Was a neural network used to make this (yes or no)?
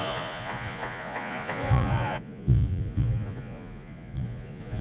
yes